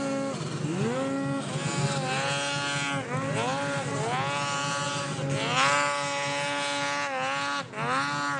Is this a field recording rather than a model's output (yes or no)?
yes